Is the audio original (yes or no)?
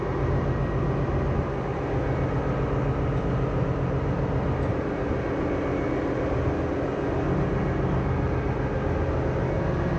yes